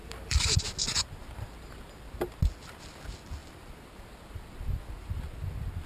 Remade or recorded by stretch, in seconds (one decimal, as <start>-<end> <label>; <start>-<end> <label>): 0.0-0.6 remade; 0.6-3.4 recorded; 3.4-4.9 remade; 4.9-5.9 recorded